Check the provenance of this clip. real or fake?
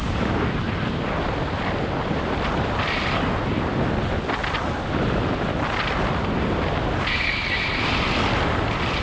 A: real